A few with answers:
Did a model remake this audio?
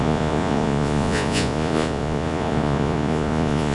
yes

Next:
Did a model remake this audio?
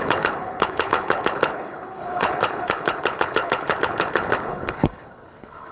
yes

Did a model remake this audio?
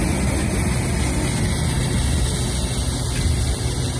no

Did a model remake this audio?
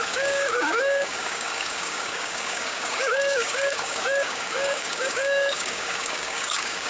yes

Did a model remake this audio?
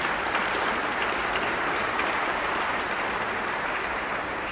no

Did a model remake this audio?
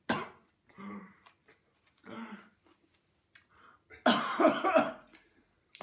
no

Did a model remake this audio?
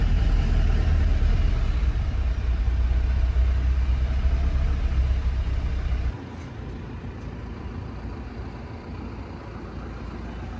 no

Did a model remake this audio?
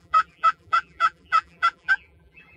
yes